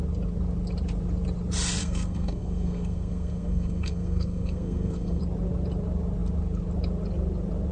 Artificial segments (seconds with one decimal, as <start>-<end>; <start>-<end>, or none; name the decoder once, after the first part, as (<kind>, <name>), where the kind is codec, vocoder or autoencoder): 1.8-5.2 (codec, SNAC)